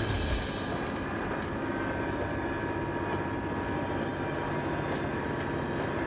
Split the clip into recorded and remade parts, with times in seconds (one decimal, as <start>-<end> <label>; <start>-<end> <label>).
0.0-6.1 recorded